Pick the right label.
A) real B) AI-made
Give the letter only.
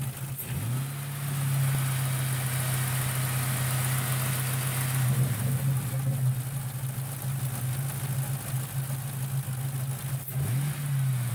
A